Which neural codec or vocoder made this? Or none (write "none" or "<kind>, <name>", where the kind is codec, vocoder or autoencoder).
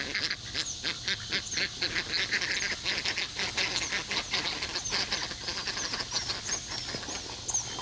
none